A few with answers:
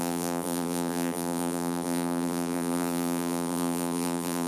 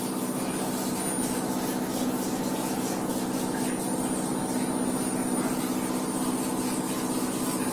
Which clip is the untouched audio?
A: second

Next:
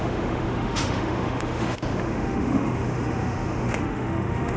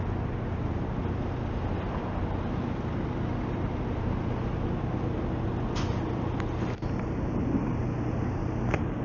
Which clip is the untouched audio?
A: second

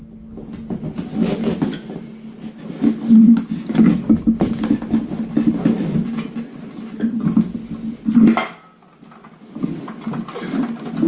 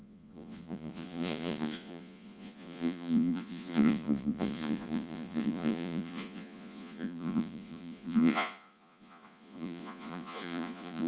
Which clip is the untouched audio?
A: first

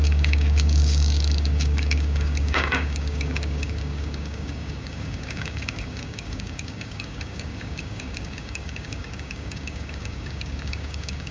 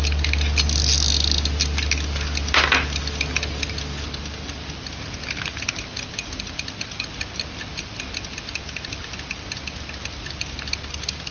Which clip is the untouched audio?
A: second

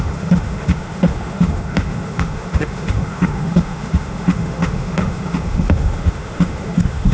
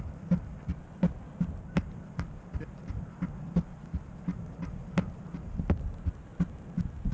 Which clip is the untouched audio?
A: second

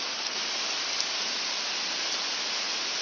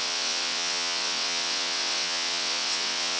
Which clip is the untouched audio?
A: first